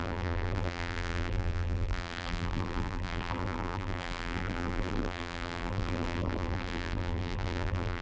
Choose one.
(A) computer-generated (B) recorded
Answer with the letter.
A